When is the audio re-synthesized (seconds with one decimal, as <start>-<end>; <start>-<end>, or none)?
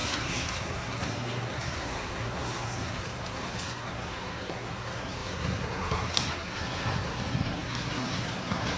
0.0-8.8